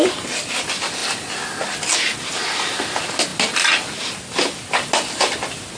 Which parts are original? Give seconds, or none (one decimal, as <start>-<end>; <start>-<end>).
0.0-5.8